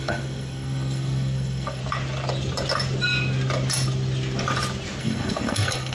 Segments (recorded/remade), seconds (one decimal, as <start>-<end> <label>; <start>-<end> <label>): 0.0-1.8 remade; 1.8-5.0 recorded; 5.0-5.9 remade